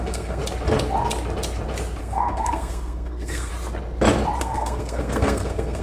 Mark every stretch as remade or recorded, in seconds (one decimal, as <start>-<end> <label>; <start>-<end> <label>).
0.0-0.4 remade; 0.4-2.0 recorded; 2.0-3.5 remade; 3.5-4.4 recorded; 4.4-5.8 remade

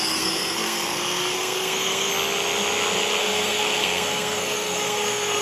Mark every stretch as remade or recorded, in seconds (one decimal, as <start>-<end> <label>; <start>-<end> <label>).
0.0-2.1 remade; 2.1-3.2 recorded; 3.2-5.4 remade

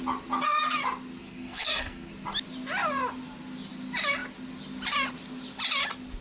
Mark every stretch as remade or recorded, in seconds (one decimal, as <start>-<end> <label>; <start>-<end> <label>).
0.0-1.2 recorded; 1.2-2.1 remade; 2.1-6.2 recorded